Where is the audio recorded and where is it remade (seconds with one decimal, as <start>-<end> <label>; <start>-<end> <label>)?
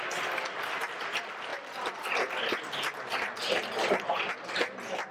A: 0.0-5.1 recorded